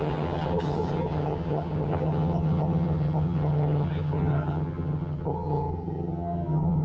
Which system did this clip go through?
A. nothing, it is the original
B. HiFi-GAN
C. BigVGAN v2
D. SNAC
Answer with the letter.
B